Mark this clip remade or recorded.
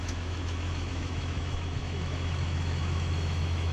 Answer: remade